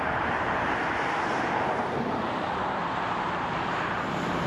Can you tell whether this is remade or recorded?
remade